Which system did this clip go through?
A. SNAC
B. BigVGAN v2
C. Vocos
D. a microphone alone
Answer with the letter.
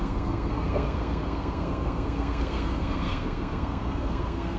A